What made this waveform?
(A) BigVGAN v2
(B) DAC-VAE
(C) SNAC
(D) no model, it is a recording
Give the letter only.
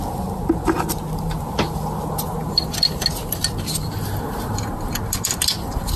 D